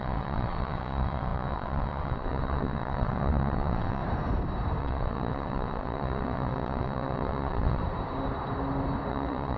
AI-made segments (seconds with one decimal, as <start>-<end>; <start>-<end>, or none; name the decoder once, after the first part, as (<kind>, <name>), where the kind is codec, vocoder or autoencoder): 0.0-4.0 (vocoder, WaveNeXt); 4.8-7.8; 9.1-9.6